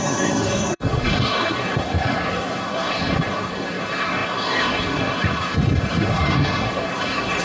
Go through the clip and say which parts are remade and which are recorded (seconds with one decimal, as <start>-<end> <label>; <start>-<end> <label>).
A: 0.0-7.4 remade